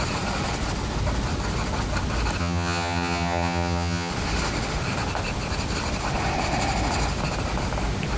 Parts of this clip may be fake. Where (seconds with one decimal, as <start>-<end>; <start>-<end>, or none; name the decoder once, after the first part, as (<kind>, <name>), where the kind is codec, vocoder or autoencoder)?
2.4-4.1 (vocoder, HiFi-GAN)